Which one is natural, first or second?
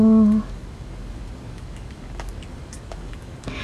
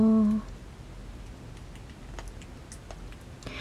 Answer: second